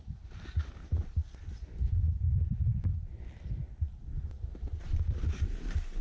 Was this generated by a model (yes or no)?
no